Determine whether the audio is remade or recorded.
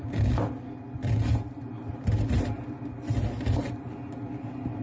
recorded